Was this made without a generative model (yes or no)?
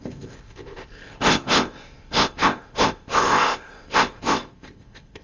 no